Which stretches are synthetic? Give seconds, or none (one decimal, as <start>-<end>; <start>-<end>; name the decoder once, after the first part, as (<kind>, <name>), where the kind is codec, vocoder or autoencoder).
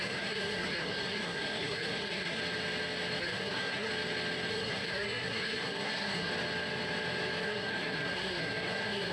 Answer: 0.0-2.4 (codec, SNAC); 3.2-3.9; 4.5-6.3; 7.4-9.1